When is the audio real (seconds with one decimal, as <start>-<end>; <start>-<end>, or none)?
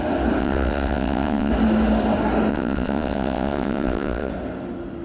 0.0-0.4; 1.5-2.5; 4.3-5.0